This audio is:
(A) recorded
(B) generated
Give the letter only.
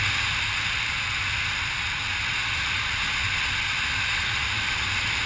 A